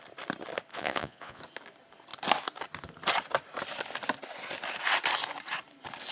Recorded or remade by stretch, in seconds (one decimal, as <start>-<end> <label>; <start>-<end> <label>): 0.0-0.7 recorded; 0.7-1.4 remade; 1.4-6.1 recorded